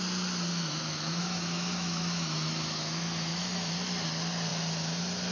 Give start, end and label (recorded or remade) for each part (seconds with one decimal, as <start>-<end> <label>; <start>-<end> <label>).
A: 0.0-0.5 recorded; 0.5-3.7 remade; 3.7-5.3 recorded